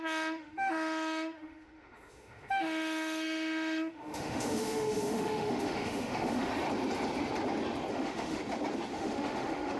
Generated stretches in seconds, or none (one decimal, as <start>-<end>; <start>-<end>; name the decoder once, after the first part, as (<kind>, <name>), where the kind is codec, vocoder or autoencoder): 0.0-6.5 (autoencoder, DAC-VAE); 7.9-8.4; 8.9-9.8